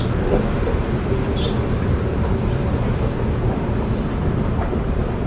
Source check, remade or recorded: recorded